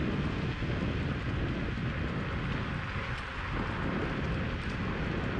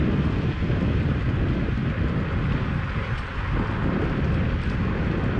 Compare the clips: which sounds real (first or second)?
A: first